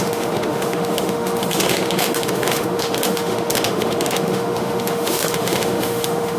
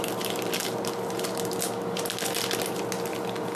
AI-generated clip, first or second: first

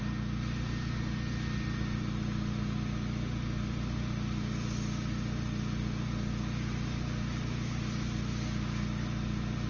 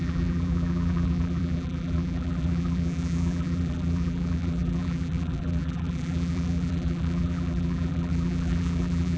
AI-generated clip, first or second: second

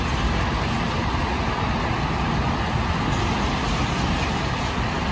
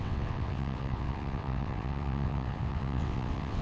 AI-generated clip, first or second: second